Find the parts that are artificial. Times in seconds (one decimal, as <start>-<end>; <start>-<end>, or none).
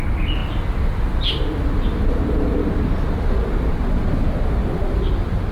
none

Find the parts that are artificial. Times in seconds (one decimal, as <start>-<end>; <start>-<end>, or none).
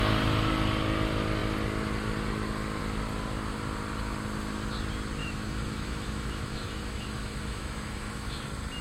5.2-8.4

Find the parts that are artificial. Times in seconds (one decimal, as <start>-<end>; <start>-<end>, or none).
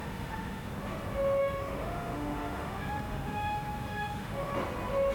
0.0-0.7; 1.4-4.5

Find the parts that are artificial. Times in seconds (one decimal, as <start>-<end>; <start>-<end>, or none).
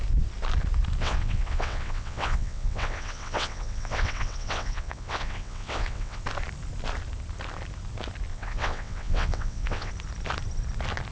1.0-6.2; 8.3-9.9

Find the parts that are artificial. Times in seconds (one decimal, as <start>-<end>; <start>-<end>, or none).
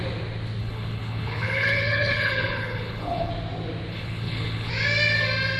0.6-3.3; 3.9-4.7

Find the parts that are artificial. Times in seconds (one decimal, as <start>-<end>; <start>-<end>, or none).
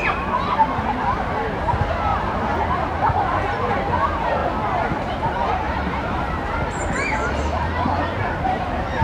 2.1-3.7; 4.4-7.3